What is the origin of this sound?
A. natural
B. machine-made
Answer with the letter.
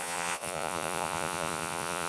B